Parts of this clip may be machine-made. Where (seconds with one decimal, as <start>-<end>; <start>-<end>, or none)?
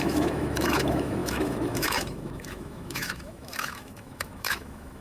0.0-5.0